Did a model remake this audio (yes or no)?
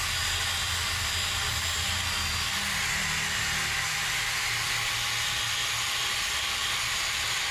no